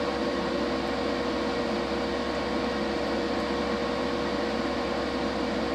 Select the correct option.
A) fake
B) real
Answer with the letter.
B